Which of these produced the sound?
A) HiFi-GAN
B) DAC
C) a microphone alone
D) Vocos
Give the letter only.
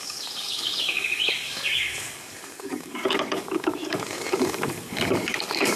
B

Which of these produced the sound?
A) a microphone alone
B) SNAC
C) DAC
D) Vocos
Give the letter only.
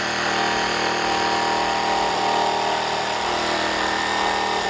A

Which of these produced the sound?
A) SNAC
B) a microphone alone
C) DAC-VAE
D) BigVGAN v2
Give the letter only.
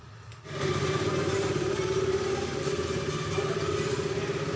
B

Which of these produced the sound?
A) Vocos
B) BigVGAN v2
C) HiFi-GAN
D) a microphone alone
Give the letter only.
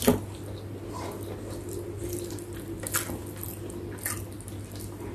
D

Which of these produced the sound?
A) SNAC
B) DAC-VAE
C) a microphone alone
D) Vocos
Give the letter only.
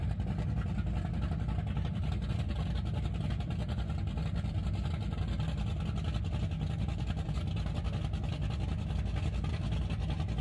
C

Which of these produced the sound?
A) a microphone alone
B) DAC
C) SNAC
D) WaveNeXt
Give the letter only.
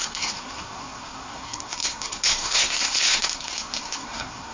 C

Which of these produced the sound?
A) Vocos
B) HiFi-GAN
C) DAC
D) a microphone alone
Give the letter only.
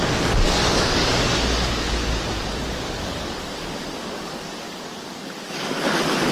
C